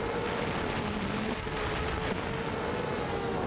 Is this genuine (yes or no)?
yes